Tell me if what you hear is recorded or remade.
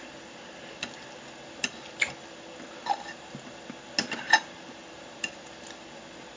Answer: recorded